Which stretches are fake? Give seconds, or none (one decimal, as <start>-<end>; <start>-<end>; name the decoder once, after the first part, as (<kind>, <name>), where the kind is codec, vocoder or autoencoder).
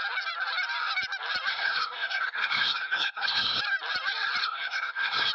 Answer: 1.5-3.6 (codec, SNAC); 4.4-5.3